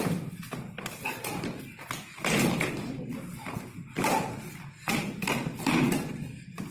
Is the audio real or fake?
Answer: real